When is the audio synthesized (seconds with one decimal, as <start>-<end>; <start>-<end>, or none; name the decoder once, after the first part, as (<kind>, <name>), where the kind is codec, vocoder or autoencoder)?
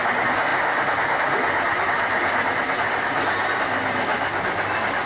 none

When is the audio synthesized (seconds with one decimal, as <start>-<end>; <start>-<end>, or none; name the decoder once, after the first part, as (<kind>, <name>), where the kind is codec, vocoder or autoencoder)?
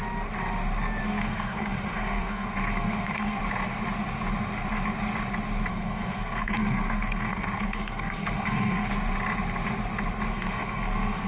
1.0-3.4 (codec, SNAC); 5.7-8.9; 10.3-11.3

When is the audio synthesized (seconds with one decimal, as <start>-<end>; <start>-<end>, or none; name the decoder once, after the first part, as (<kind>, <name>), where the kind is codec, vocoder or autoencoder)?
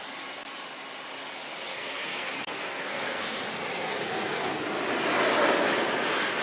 1.7-3.4 (codec, SNAC); 3.9-4.6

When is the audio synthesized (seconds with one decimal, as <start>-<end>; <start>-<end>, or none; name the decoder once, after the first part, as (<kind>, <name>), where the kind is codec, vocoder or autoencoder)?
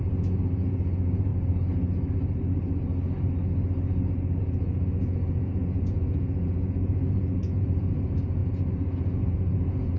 0.0-1.3 (vocoder, Vocos); 4.4-10.0